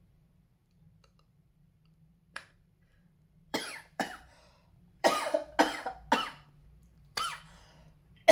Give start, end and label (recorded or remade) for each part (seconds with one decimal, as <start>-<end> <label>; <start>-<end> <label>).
0.0-0.6 recorded; 0.6-5.5 remade; 5.5-6.8 recorded; 6.8-7.6 remade; 7.6-8.3 recorded